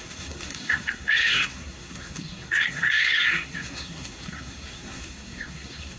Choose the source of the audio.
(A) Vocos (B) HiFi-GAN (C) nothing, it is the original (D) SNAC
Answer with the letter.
D